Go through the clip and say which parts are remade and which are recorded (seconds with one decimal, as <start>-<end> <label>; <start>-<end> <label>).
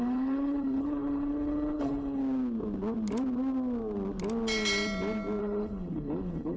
0.0-2.2 remade; 2.2-5.4 recorded; 5.4-6.6 remade